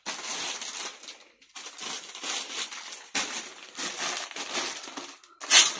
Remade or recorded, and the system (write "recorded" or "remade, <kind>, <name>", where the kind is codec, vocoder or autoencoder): recorded